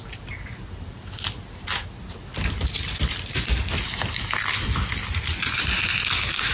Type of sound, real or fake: real